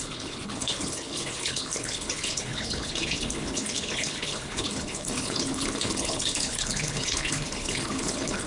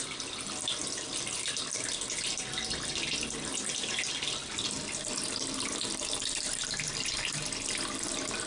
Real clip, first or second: second